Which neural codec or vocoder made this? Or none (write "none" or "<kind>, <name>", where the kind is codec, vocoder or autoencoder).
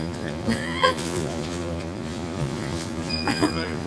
vocoder, Vocos